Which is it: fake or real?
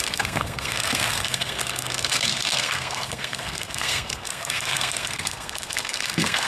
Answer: fake